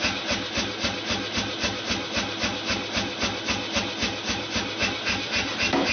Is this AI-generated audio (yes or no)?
no